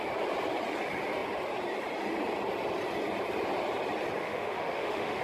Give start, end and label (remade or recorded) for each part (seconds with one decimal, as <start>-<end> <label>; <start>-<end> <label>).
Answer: 0.0-4.2 recorded; 4.2-5.2 remade